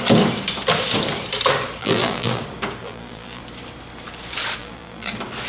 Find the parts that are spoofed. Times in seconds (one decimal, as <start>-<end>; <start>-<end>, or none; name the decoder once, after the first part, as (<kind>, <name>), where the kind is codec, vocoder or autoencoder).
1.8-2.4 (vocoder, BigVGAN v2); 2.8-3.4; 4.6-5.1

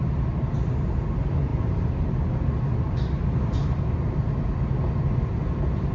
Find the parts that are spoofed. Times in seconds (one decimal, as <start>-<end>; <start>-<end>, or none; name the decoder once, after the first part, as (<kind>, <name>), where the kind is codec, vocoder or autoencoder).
none

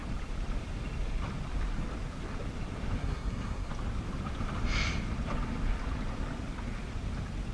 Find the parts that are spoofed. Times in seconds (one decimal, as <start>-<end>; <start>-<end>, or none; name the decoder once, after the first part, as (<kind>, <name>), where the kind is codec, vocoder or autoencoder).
3.0-3.7 (codec, SNAC)

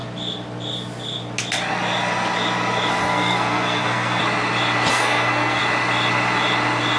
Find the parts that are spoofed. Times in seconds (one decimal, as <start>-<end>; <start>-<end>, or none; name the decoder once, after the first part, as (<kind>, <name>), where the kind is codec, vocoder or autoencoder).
3.0-4.2 (codec, SNAC); 4.9-5.6

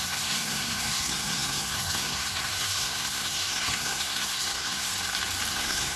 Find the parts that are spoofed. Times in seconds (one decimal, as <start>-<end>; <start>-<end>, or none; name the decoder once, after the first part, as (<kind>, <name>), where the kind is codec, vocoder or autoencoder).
0.0-4.9 (codec, SNAC); 5.5-6.0